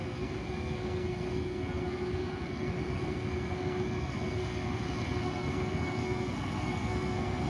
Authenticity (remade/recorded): remade